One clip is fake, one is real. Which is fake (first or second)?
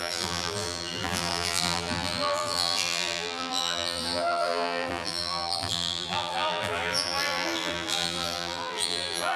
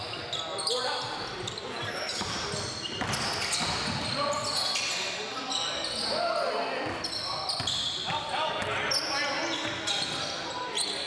first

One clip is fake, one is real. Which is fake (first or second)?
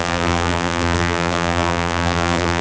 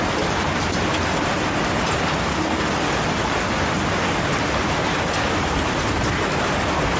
first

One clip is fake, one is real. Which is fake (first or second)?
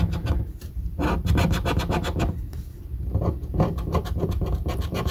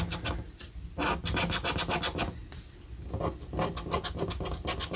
first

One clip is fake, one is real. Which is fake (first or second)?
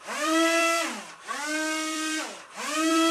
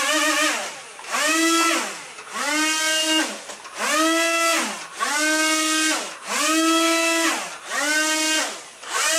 first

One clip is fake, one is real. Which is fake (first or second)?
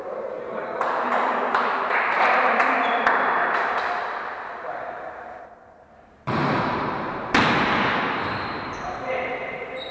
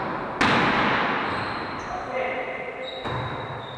first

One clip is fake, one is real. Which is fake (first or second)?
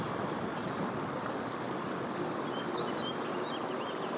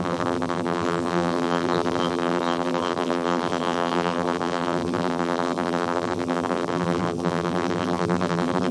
second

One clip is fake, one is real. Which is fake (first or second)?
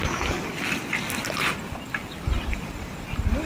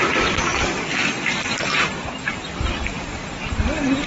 second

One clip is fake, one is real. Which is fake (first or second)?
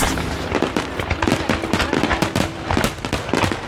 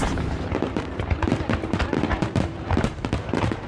second